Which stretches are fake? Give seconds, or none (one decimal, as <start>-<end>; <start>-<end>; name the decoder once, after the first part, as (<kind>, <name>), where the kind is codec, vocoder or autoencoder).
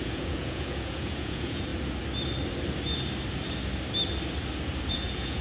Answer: 0.0-1.7 (vocoder, Vocos); 4.9-5.4